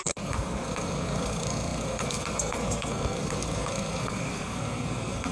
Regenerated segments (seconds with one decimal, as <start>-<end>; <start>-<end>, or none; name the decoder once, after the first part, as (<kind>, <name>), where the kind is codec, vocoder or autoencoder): 0.0-5.3 (codec, SNAC)